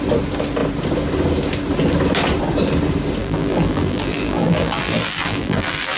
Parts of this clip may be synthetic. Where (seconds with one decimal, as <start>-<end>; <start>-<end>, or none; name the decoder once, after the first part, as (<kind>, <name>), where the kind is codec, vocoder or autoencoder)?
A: 3.2-6.0 (vocoder, BigVGAN v2)

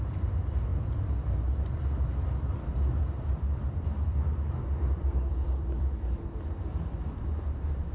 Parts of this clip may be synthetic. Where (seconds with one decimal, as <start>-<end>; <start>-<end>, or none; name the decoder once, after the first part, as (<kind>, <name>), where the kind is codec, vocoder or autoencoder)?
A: 0.0-0.7 (vocoder, BigVGAN v2); 2.3-2.7; 3.6-7.9

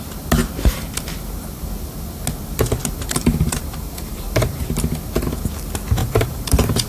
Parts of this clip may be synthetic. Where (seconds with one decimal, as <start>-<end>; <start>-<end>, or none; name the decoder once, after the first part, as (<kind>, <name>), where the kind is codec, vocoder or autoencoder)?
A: 0.4-1.0 (vocoder, BigVGAN v2); 2.8-4.6; 6.0-6.9

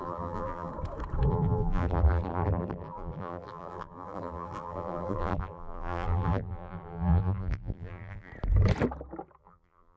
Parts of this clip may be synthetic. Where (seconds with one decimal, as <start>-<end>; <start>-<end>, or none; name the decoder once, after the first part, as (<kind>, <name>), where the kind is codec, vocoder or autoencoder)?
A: 0.0-0.7 (vocoder, BigVGAN v2); 1.3-8.3; 9.4-10.0

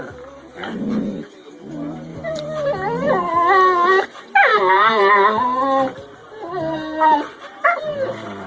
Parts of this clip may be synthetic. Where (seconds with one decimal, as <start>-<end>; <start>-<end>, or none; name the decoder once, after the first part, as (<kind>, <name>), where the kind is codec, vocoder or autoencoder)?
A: 2.1-3.1 (vocoder, BigVGAN v2); 4.5-5.1; 6.2-7.8

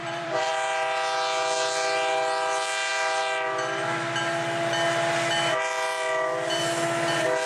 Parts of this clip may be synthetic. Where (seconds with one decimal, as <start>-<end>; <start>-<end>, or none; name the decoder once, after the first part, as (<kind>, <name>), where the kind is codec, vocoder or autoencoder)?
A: 0.0-0.5 (vocoder, BigVGAN v2)